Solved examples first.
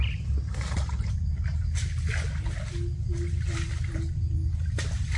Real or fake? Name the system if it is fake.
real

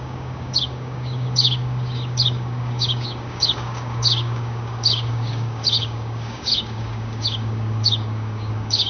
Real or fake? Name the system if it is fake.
fake, codec, DAC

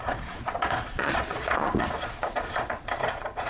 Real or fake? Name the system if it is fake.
fake, vocoder, Vocos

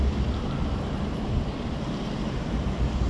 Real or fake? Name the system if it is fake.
fake, vocoder, BigVGAN v2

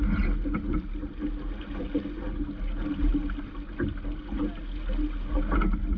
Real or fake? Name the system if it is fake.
real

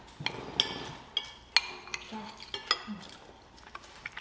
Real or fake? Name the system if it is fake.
real